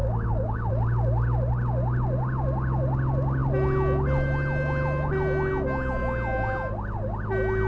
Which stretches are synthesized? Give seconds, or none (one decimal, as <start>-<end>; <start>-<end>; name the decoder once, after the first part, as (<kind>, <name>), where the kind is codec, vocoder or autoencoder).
0.0-0.7 (codec, DAC)